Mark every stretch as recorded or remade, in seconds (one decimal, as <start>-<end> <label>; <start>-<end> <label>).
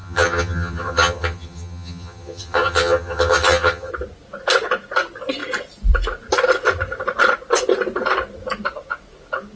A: 0.0-3.9 remade; 3.9-9.6 recorded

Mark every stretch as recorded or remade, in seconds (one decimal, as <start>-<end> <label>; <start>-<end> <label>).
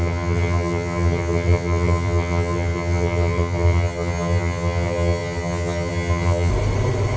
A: 0.0-6.5 remade; 6.5-7.2 recorded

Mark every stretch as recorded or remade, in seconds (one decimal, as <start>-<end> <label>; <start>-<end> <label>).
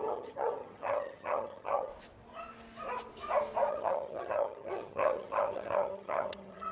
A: 0.0-1.9 remade; 1.9-3.7 recorded; 3.7-6.7 remade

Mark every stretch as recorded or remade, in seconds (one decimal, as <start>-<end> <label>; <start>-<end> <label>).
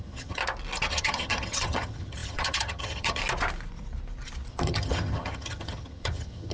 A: 0.0-0.4 remade; 0.4-0.9 recorded; 0.9-3.2 remade; 3.2-4.5 recorded; 4.5-6.5 remade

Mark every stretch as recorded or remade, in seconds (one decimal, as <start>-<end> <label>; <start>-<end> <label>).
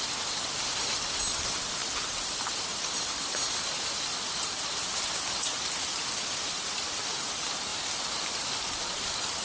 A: 0.0-9.4 recorded